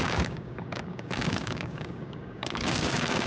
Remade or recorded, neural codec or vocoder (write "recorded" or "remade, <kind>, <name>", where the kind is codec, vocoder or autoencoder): remade, codec, DAC